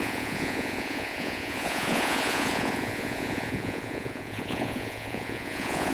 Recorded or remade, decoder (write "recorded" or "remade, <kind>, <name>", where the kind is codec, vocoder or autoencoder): remade, vocoder, Vocos